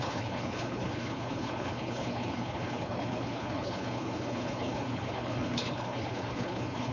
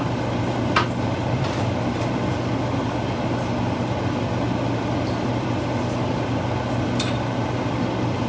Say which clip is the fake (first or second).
first